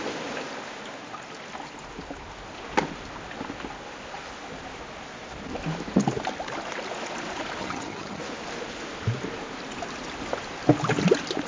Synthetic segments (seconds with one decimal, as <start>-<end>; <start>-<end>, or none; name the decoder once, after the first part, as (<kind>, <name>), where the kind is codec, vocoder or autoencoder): 7.6-8.2 (vocoder, HiFi-GAN)